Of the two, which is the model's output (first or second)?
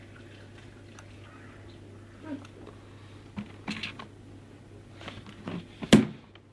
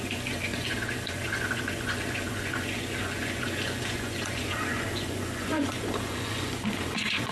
second